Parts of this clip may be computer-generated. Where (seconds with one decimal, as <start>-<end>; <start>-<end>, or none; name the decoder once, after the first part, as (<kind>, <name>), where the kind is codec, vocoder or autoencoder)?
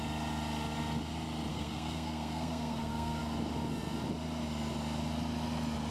1.5-3.2 (codec, SNAC)